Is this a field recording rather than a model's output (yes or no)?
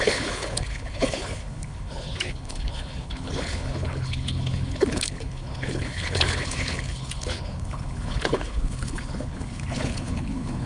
no